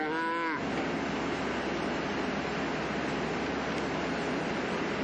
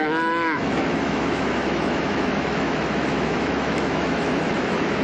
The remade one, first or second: second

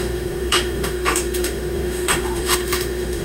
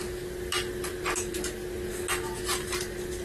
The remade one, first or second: first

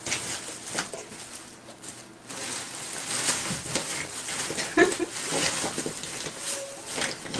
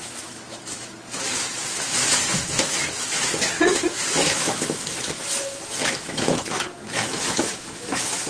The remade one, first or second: second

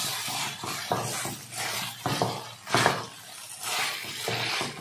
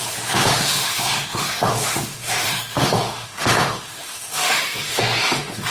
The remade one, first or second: second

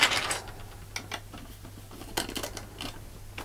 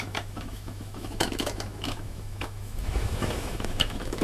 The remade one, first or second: second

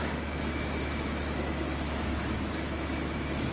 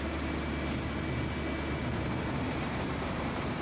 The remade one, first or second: first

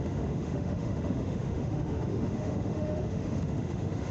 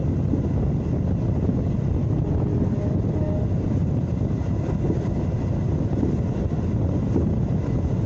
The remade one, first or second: first